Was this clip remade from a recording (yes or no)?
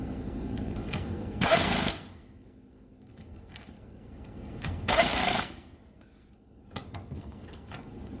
yes